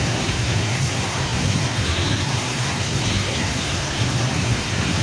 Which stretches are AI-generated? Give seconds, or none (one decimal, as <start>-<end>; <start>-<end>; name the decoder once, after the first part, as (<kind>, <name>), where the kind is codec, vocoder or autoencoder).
0.0-5.0 (codec, SNAC)